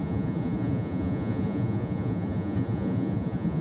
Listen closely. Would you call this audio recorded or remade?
remade